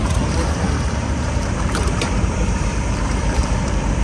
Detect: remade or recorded remade